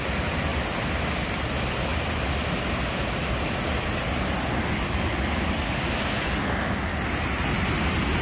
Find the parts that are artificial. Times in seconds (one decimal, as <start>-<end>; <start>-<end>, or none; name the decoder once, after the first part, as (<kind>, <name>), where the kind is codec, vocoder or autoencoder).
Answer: none